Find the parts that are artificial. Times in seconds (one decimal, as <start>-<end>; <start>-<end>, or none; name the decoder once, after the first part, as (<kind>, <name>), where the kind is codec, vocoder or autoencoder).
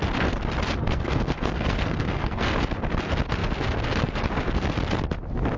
0.8-2.5 (codec, SNAC)